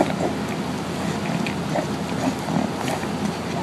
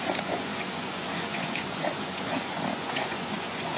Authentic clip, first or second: first